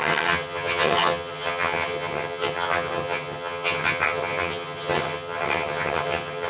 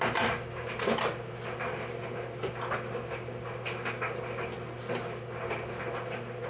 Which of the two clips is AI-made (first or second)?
first